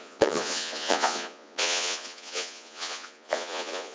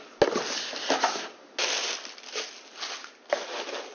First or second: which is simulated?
first